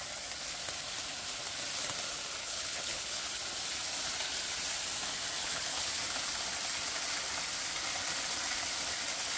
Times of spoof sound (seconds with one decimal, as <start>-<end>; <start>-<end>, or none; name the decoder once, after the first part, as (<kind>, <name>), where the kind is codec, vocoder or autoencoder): 2.4-3.2 (codec, HILCodec); 5.4-5.9